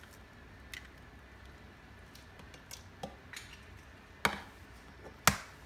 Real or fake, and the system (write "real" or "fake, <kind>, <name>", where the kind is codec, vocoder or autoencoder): real